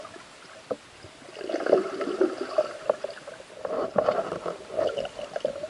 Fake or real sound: real